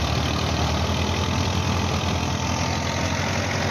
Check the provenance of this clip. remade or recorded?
recorded